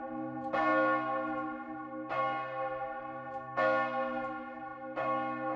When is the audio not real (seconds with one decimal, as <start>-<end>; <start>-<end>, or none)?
none